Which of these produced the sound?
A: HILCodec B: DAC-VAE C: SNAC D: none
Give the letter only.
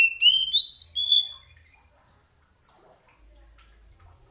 D